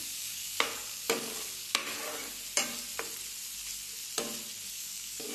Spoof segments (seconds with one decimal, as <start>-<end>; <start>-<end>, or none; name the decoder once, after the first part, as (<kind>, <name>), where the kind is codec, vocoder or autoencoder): 0.0-1.8 (codec, DAC); 4.7-5.3